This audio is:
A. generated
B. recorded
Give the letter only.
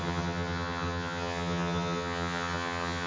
A